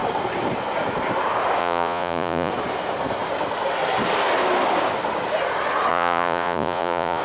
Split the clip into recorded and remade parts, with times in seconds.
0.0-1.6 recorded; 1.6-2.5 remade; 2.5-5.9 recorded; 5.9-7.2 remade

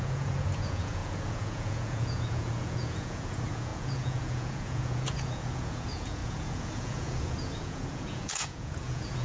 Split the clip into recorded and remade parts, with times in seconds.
0.0-9.2 remade

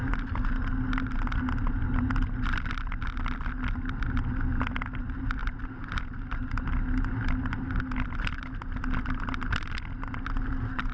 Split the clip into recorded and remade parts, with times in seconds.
0.0-10.9 recorded

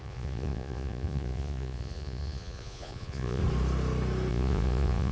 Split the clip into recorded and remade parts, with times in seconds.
0.0-3.4 remade; 3.4-4.3 recorded; 4.3-5.1 remade

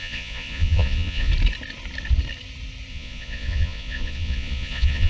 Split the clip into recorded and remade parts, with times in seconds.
0.0-1.3 remade; 1.3-2.9 recorded; 2.9-5.1 remade

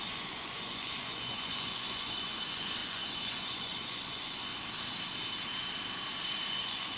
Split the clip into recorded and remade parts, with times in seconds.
0.0-4.5 remade; 4.5-6.5 recorded; 6.5-7.0 remade

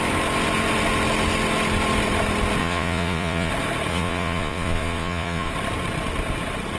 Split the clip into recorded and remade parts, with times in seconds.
0.0-2.6 recorded; 2.6-3.5 remade; 3.5-3.9 recorded; 3.9-5.5 remade; 5.5-6.8 recorded

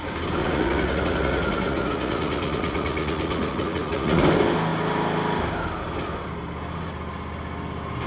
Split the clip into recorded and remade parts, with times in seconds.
0.0-0.4 recorded; 0.4-4.2 remade; 4.2-8.1 recorded